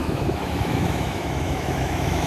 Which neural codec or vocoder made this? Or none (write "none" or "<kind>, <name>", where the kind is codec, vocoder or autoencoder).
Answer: autoencoder, DAC-VAE